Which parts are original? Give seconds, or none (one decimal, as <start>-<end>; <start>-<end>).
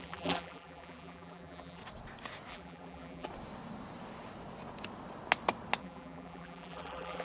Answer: 1.8-2.5; 3.3-5.8